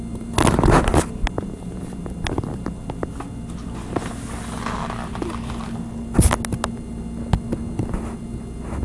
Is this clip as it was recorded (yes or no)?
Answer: yes